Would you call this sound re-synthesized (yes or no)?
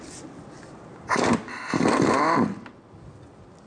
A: no